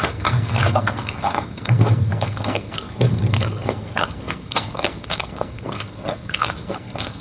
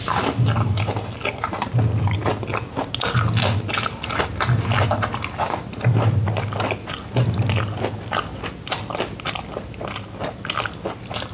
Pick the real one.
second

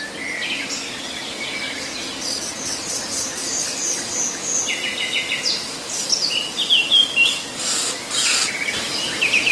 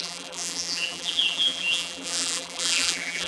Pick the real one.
first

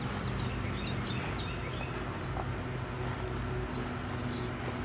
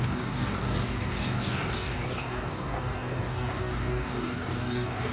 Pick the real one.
first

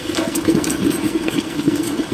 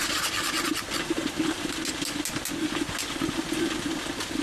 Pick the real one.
second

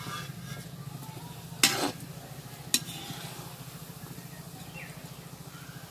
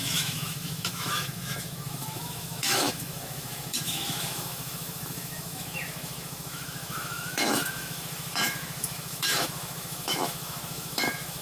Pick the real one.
first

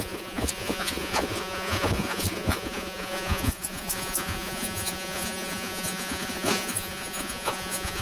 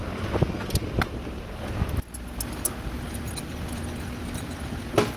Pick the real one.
second